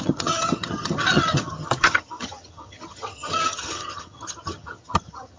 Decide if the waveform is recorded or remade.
remade